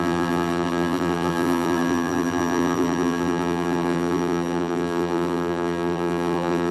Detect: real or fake fake